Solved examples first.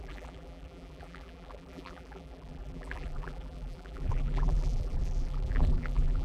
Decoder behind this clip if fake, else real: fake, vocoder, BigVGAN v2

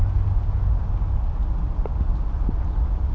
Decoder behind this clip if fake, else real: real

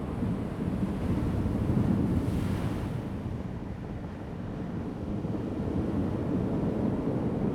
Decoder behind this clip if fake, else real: real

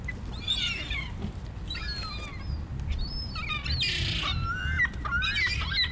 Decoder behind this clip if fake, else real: real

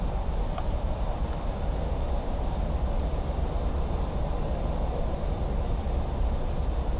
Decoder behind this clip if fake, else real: real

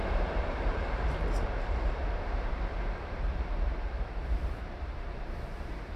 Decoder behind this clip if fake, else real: fake, vocoder, BigVGAN v2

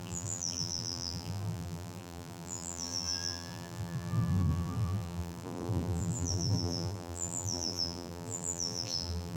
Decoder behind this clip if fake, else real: fake, vocoder, BigVGAN v2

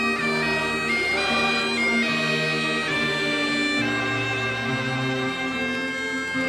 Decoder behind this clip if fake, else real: real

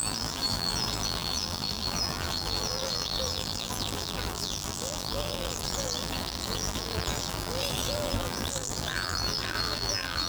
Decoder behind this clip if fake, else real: fake, vocoder, BigVGAN v2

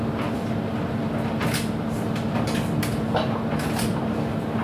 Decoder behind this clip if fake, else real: real